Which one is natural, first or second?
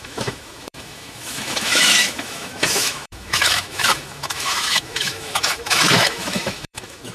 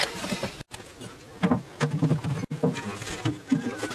second